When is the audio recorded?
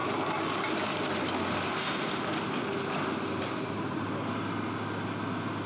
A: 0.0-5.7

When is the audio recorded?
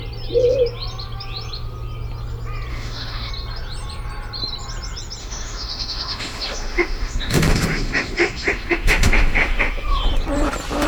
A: 0.0-2.7; 3.3-5.2; 10.0-10.9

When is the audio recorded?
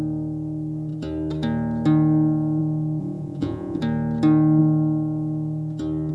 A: 0.0-3.0; 3.8-6.1